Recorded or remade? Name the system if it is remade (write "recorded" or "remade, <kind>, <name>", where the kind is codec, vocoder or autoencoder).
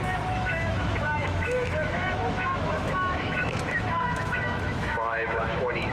remade, autoencoder, DAC-VAE